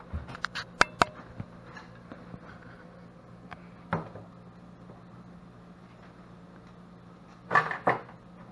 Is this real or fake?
real